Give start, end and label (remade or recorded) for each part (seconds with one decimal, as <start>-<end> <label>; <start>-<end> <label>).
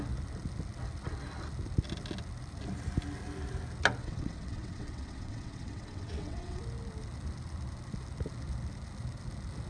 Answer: 0.0-4.0 recorded; 4.0-6.6 remade; 6.6-9.7 recorded